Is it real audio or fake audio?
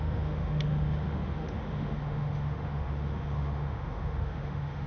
fake